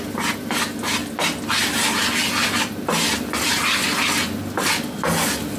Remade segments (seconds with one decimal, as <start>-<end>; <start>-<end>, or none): none